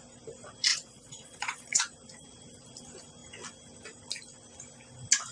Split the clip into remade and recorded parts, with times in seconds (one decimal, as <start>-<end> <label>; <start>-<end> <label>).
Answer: 0.0-0.7 recorded; 0.7-1.8 remade; 1.8-5.3 recorded